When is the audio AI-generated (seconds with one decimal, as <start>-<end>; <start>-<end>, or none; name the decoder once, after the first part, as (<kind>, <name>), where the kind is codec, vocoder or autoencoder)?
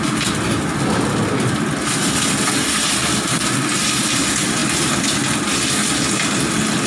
none